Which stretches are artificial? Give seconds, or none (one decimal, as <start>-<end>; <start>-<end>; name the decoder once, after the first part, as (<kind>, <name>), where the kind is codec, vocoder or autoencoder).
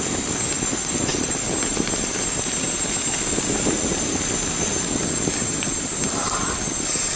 none